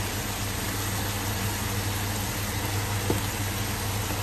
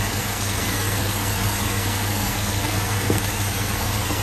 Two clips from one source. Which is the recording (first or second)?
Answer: first